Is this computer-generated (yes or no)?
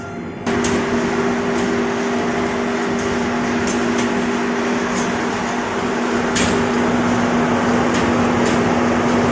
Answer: no